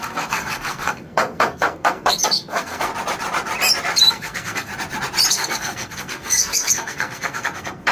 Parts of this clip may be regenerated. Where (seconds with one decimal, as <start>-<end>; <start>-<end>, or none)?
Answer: 0.0-2.9; 4.1-4.7; 5.3-7.9